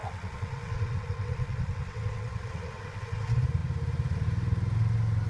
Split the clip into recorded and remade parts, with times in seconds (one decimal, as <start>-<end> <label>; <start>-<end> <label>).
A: 0.0-3.2 remade; 3.2-5.3 recorded